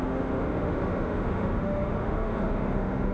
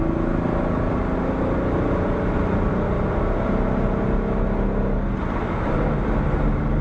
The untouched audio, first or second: second